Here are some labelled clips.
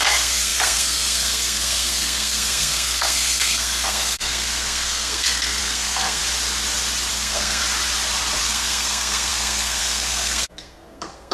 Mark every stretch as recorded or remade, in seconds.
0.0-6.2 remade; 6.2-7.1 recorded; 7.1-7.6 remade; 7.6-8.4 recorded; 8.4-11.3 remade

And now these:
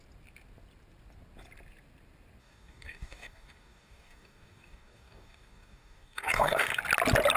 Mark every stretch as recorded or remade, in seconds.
0.0-2.4 recorded; 2.4-6.8 remade; 6.8-7.4 recorded

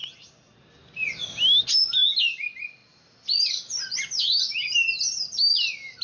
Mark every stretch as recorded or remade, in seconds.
0.0-6.0 recorded

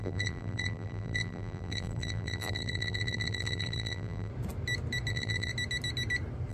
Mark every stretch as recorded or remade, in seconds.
0.0-4.3 remade; 4.3-5.1 recorded; 5.1-5.5 remade; 5.5-6.5 recorded

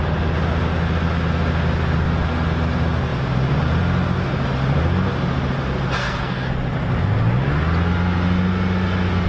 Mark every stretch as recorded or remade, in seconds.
0.0-6.0 recorded; 6.0-6.5 remade; 6.5-9.3 recorded

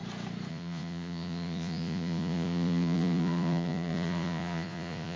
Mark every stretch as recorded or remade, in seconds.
0.0-0.5 recorded; 0.5-5.2 remade

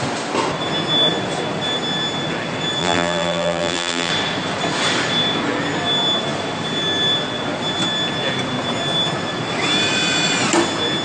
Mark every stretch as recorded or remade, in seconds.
0.0-2.8 recorded; 2.8-4.1 remade; 4.1-11.0 recorded